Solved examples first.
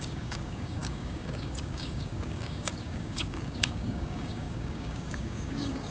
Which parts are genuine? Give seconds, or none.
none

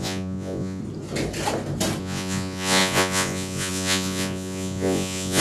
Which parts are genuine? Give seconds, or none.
0.8-2.0

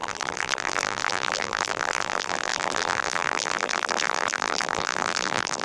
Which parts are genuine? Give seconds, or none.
none

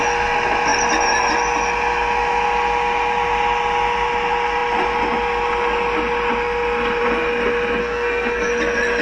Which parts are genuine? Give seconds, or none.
0.0-7.8; 8.5-9.0

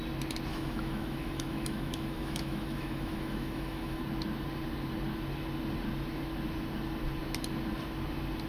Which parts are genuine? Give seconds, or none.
0.0-0.5; 4.0-8.5